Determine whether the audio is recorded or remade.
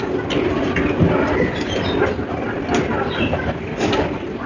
recorded